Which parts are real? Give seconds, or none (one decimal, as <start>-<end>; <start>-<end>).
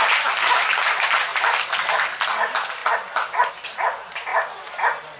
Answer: 0.0-1.3; 1.9-4.3